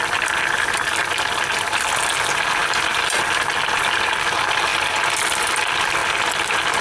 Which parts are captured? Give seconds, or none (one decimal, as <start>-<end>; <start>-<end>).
0.0-2.6; 3.5-6.8